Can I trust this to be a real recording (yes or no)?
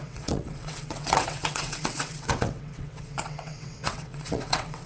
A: no